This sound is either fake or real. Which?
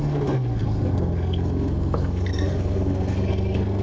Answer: fake